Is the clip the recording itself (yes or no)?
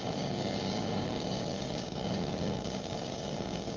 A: no